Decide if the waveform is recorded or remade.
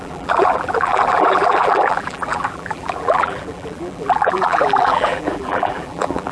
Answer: remade